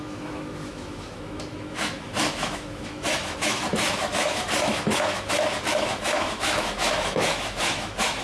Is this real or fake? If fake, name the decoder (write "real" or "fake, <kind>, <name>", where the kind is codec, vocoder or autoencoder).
fake, autoencoder, DAC-VAE